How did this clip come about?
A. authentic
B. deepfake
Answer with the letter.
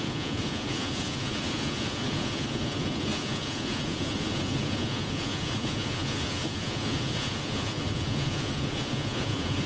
B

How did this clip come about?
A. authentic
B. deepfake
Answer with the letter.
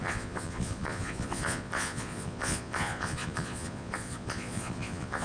B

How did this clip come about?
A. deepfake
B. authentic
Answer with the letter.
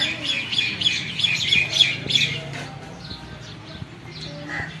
B